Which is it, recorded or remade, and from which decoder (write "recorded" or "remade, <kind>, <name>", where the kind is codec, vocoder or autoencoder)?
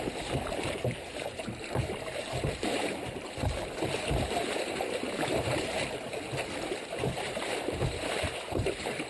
remade, vocoder, BigVGAN v2